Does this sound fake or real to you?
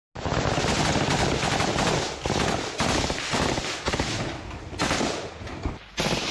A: real